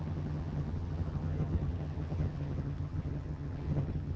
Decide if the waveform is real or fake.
fake